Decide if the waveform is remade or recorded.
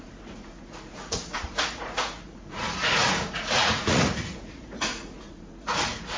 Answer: remade